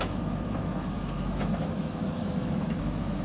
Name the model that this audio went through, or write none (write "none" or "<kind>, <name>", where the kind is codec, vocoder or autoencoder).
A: autoencoder, DAC-VAE